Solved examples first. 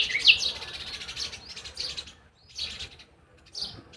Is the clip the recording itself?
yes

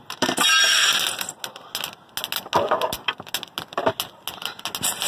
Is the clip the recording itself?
yes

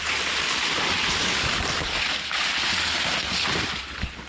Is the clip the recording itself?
yes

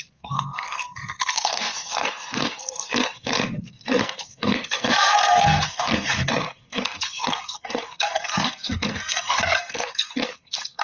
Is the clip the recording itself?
no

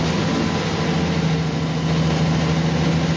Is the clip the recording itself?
yes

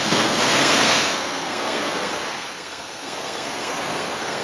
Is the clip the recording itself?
no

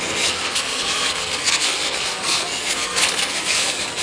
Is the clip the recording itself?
no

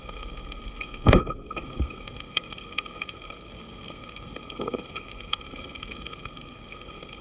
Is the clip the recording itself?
no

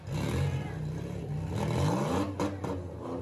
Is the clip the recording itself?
yes